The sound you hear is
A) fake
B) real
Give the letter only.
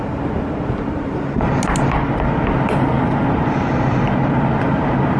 B